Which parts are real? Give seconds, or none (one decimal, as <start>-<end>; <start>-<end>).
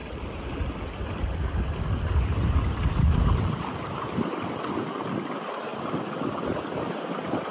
4.5-5.7; 6.9-7.5